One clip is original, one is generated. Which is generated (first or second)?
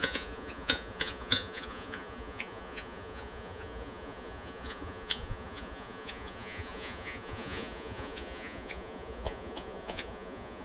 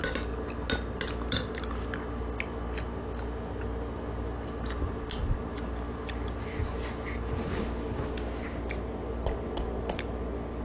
first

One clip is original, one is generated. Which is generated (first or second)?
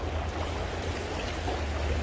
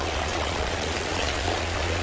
second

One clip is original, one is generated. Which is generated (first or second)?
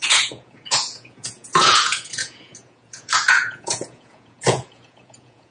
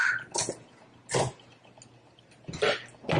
first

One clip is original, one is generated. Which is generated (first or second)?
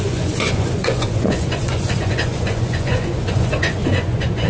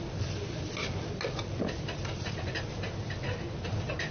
first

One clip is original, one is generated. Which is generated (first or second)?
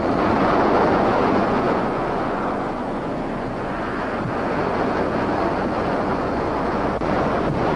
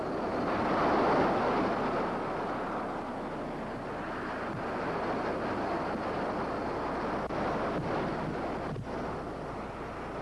first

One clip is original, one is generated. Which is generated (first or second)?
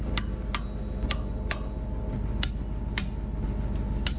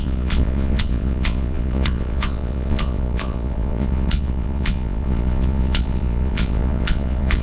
second